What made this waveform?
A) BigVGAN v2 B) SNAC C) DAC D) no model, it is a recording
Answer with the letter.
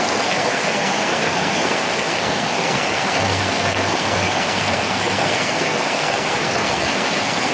B